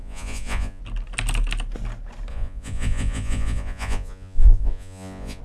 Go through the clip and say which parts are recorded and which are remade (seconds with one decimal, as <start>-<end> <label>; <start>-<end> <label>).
0.0-0.8 remade; 0.8-2.3 recorded; 2.3-5.4 remade